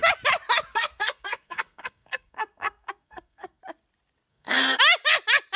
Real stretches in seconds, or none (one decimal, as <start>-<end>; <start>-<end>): 0.0-0.7; 3.6-4.3; 4.8-5.6